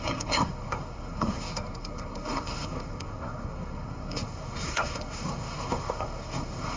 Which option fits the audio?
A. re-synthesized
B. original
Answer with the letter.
A